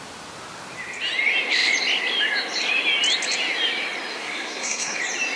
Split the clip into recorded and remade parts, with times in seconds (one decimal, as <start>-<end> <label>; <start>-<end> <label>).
0.0-4.1 recorded; 4.1-5.0 remade; 5.0-5.4 recorded